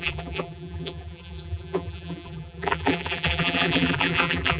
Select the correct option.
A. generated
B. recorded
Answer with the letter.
A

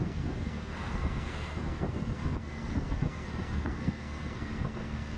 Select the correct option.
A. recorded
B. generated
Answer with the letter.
B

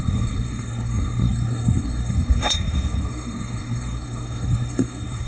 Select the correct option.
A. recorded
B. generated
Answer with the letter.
B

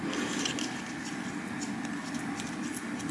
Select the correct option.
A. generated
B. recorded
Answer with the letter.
B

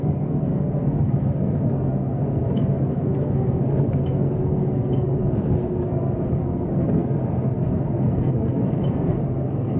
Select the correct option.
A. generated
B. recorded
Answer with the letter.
A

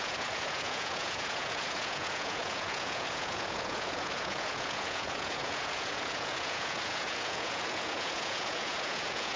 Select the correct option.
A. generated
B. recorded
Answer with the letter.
A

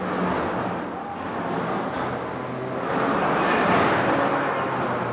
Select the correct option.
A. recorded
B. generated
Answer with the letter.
A